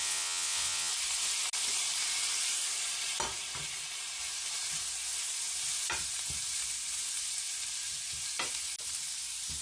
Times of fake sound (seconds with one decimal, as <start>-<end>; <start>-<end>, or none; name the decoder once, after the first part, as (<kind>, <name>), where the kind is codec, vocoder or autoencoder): 0.0-0.9 (vocoder, WaveNeXt)